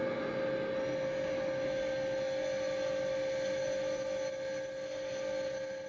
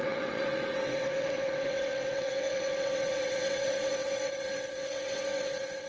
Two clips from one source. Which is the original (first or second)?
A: first